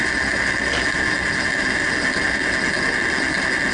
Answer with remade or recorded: recorded